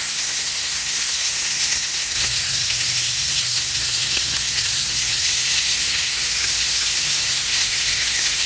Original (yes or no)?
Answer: no